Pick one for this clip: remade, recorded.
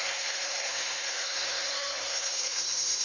remade